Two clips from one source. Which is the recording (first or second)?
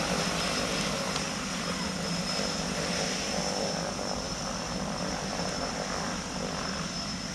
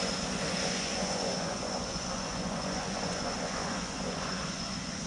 first